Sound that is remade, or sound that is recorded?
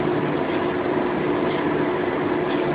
recorded